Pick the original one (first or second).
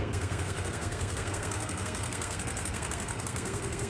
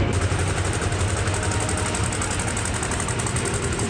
second